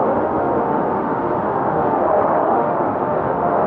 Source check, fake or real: fake